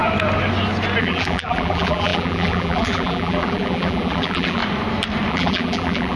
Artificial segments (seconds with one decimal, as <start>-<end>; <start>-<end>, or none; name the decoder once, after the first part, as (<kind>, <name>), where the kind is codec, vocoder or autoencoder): 1.0-4.6 (vocoder, BigVGAN v2); 5.3-6.2